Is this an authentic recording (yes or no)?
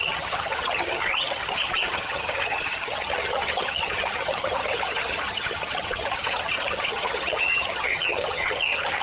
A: no